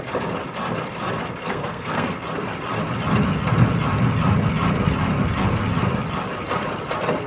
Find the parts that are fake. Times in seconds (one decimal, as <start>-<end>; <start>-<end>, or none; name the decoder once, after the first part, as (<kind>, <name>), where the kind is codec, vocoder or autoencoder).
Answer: 1.4-2.2 (codec, SNAC)

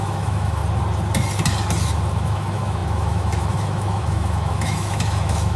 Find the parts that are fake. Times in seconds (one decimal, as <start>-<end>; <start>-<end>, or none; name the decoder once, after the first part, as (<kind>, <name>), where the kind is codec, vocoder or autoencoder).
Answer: 0.0-0.6 (autoencoder, DAC-VAE); 2.1-5.6

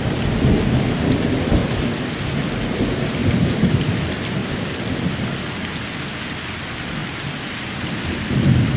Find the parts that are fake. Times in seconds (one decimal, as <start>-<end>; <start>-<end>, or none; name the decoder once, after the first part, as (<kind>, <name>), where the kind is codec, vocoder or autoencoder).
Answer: 1.6-2.8 (vocoder, BigVGAN v2); 3.2-3.8; 4.4-5.1

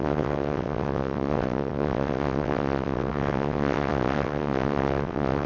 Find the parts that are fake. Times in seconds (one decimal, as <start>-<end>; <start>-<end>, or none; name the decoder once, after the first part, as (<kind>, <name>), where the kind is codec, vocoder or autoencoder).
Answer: 0.0-5.5 (vocoder, WaveNeXt)

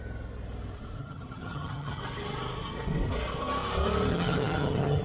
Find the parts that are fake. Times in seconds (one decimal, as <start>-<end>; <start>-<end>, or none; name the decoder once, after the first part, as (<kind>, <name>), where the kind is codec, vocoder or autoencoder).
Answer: 1.0-2.0 (vocoder, HiFi-GAN); 4.1-5.0

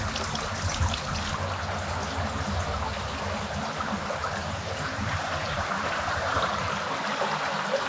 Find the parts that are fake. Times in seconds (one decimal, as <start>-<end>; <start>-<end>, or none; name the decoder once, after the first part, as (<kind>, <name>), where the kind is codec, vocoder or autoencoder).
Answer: 4.4-6.6 (vocoder, BigVGAN v2)

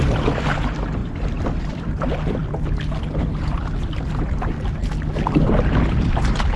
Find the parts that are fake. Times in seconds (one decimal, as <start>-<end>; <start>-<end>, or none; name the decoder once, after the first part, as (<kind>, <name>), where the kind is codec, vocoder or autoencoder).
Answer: 0.0-2.4 (vocoder, BigVGAN v2); 3.1-4.8; 5.7-6.6